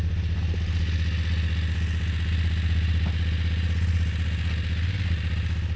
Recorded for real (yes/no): yes